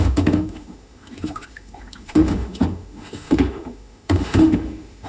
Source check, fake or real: fake